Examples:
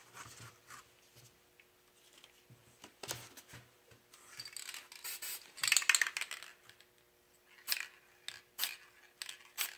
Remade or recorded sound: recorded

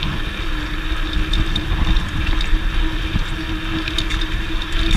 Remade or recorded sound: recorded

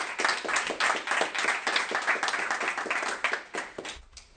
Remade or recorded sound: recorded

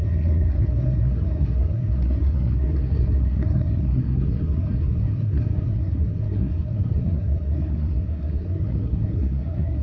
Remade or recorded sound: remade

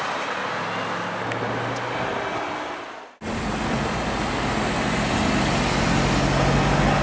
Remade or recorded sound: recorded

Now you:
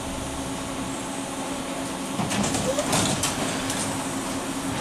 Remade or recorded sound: recorded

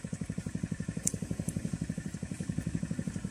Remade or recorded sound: recorded